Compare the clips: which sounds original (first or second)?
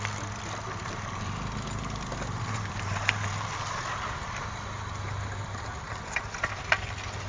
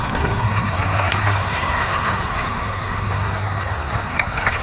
first